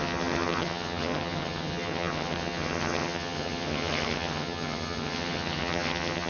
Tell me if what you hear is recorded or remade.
remade